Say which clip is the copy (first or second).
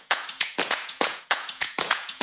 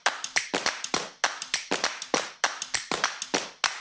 first